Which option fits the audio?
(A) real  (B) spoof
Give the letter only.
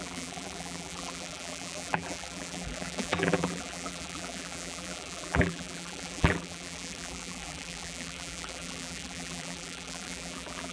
B